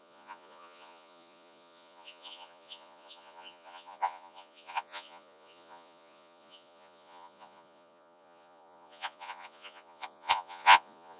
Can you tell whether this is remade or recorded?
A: remade